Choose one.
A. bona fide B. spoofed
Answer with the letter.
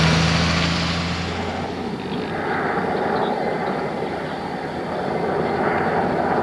A